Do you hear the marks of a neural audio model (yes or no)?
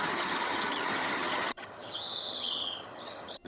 yes